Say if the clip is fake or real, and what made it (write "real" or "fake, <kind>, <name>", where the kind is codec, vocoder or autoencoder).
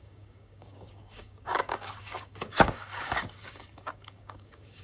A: fake, codec, DAC